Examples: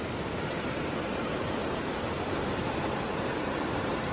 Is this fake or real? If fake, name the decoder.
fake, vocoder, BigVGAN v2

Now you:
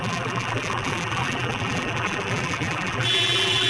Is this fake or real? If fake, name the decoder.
fake, vocoder, BigVGAN v2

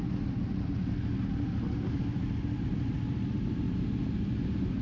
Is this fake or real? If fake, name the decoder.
real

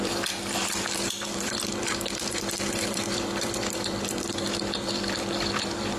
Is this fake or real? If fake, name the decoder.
fake, vocoder, BigVGAN v2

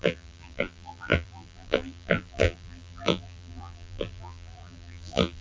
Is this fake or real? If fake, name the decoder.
fake, vocoder, BigVGAN v2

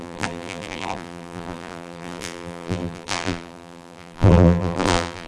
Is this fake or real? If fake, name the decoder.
fake, vocoder, BigVGAN v2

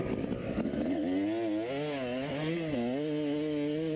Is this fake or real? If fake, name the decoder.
real